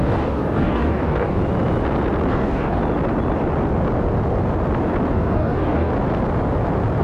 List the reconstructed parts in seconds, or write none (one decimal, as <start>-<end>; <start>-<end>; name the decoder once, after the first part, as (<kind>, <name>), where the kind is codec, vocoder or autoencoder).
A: 0.0-1.4 (codec, DAC); 2.3-2.8; 5.1-5.9